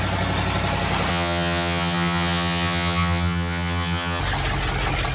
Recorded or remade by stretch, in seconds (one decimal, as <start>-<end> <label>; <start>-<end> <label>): 0.0-1.1 recorded; 1.1-4.2 remade; 4.2-5.1 recorded